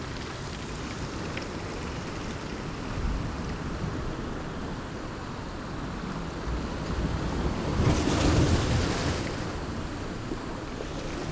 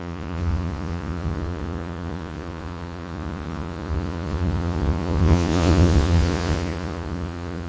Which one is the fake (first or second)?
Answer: second